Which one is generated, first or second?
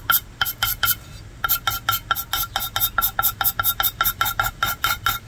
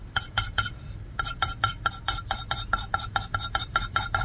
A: second